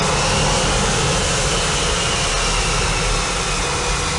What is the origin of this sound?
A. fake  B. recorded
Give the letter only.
B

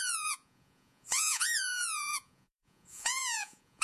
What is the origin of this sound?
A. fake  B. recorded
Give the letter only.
A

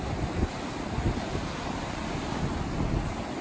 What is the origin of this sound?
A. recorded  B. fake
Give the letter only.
A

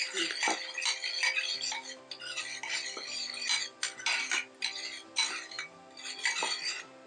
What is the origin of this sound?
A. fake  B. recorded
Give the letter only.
B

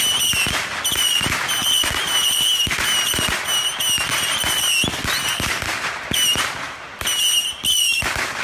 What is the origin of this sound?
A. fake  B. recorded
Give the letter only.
B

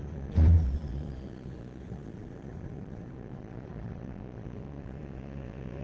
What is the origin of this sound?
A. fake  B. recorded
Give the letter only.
A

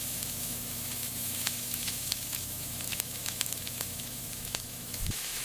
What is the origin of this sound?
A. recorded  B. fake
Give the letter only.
B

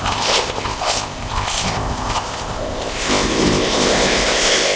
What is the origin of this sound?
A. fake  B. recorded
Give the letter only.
A